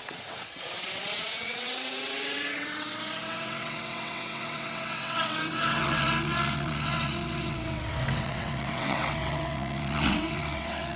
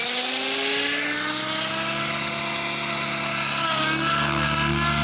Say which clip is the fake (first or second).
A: first